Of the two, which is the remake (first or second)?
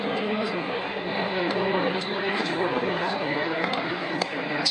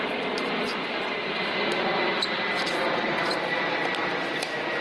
first